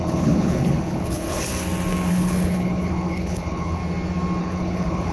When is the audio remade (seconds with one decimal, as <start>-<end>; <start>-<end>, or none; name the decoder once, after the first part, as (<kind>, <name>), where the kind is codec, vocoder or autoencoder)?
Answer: 0.0-1.5 (codec, HILCodec); 2.1-3.8; 4.4-5.1